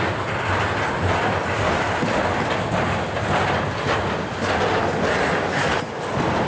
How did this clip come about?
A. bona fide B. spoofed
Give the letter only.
A